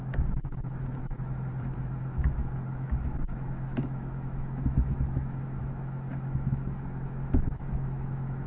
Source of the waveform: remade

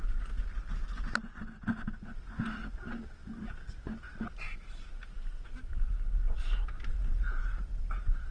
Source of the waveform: recorded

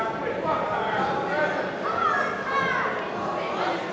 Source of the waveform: recorded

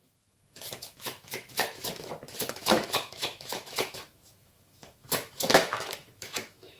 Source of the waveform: remade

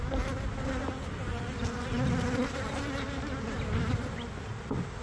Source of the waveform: recorded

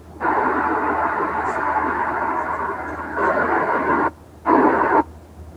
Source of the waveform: recorded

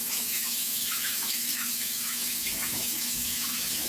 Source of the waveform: remade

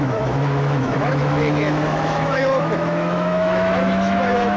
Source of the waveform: remade